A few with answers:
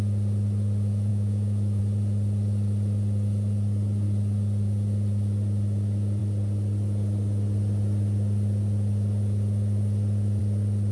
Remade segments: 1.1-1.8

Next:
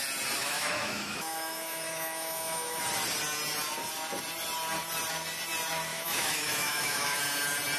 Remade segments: 0.4-2.8; 5.9-7.2

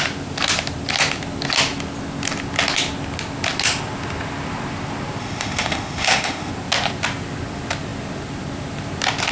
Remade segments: 5.2-6.5

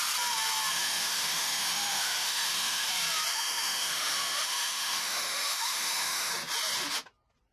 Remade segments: 0.7-2.9; 3.3-6.3

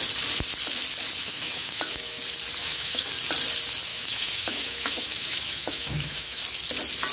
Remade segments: 1.2-2.2; 2.6-3.1; 3.9-6.4

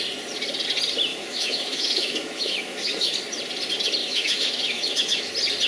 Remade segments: 1.1-3.1; 4.0-5.3

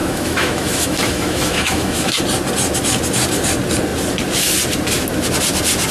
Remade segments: 0.0-2.2

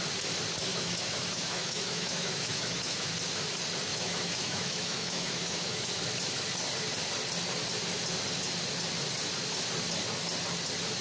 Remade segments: 0.7-3.1; 3.9-5.9